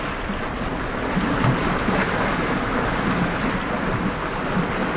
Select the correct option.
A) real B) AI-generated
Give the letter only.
A